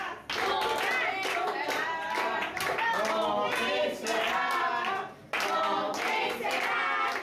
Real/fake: real